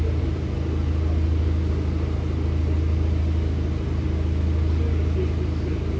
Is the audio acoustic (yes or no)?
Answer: yes